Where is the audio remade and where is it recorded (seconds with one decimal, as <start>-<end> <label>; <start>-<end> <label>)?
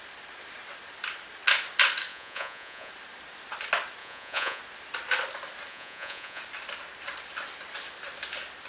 0.0-2.1 recorded; 2.1-2.9 remade; 2.9-4.0 recorded; 4.0-4.6 remade; 4.6-5.7 recorded; 5.7-6.4 remade; 6.4-8.7 recorded